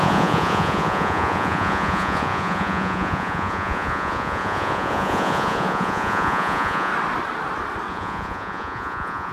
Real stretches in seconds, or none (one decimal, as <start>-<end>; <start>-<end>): 6.9-7.9